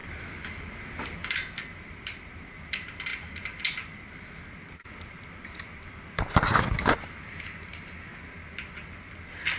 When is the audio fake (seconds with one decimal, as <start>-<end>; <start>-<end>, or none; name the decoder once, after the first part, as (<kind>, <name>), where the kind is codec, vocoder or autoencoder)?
1.3-6.5 (vocoder, BigVGAN v2)